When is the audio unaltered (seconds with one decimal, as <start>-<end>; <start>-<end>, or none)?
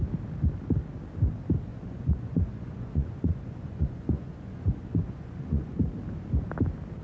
0.0-1.7; 5.8-7.0